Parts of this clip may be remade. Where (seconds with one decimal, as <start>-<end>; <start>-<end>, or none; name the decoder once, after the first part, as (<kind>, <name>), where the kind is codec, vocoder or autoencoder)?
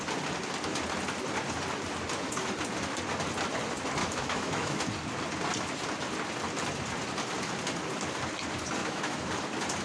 4.0-4.8 (autoencoder, DAC-VAE); 8.8-9.3